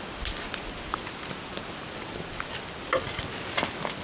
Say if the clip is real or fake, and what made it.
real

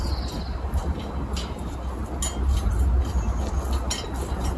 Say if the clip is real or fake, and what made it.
real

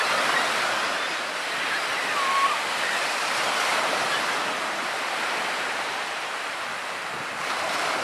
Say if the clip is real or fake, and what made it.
fake, vocoder, BigVGAN v2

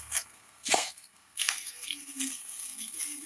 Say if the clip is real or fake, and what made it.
fake, codec, SNAC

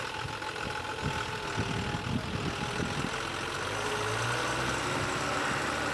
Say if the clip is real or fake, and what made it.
real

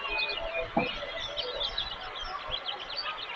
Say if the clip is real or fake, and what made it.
real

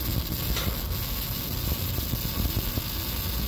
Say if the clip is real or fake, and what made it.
real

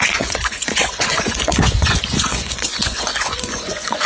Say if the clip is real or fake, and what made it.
fake, vocoder, Vocos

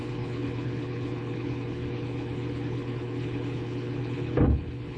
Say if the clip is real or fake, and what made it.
fake, codec, HILCodec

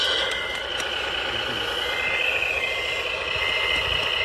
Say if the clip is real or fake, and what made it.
real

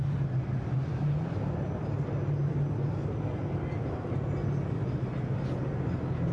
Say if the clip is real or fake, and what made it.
real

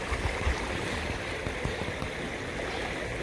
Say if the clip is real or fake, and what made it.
real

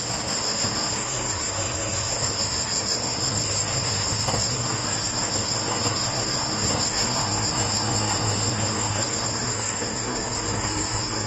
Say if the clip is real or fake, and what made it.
fake, codec, SNAC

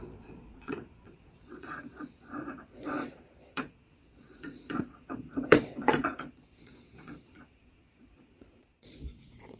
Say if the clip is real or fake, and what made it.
fake, vocoder, Vocos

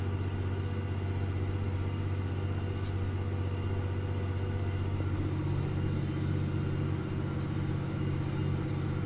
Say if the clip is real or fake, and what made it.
real